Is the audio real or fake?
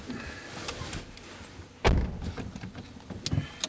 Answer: real